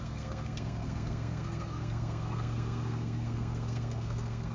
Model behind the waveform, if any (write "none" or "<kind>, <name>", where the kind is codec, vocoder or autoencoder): codec, SNAC